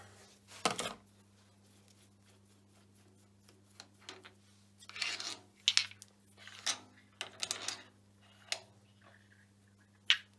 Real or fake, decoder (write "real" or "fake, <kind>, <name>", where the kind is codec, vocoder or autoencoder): real